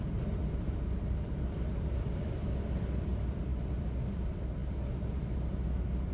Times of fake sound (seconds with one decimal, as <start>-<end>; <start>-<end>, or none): 0.0-4.6